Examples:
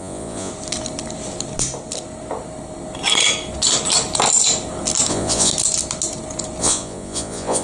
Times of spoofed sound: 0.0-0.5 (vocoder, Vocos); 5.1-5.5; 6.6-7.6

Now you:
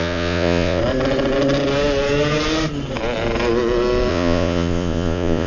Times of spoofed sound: 0.0-0.8 (vocoder, Vocos); 4.1-5.5

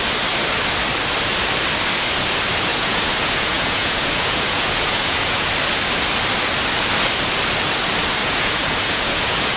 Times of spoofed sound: 2.7-5.5 (vocoder, Vocos); 8.2-9.6